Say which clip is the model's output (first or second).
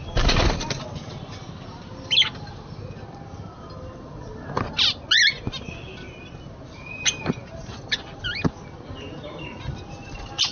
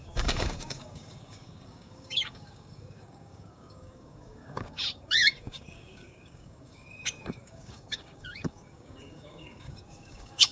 second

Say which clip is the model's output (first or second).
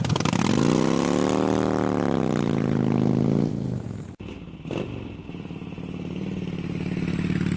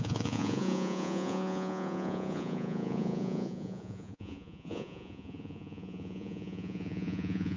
second